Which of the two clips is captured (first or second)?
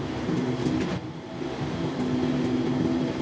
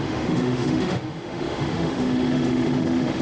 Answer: first